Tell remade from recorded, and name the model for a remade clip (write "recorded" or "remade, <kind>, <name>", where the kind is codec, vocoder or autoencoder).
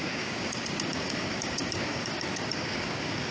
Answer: remade, codec, DAC